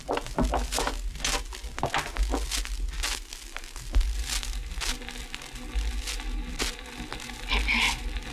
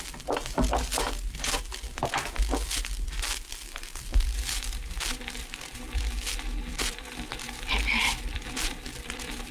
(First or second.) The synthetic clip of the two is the second